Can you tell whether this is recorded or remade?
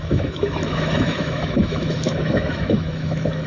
remade